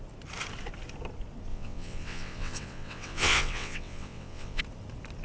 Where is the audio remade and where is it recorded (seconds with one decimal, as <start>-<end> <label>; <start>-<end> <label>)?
0.0-1.5 recorded; 1.5-4.6 remade; 4.6-5.2 recorded